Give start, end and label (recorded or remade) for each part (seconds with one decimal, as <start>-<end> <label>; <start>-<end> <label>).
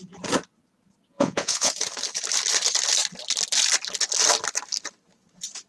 0.0-1.1 recorded; 1.1-1.7 remade; 1.7-5.7 recorded